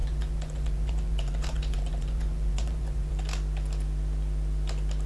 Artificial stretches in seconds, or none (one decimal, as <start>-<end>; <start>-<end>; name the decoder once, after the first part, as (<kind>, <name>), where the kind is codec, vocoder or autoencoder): 0.0-3.1 (vocoder, Vocos)